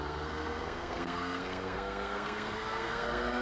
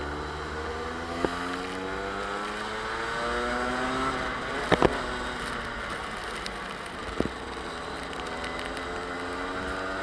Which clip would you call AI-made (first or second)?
first